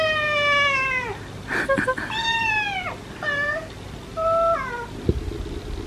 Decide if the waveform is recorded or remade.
recorded